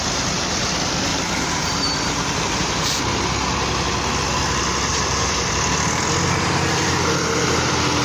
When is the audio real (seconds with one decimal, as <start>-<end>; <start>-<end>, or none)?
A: 0.0-1.1; 3.0-4.9; 5.7-8.0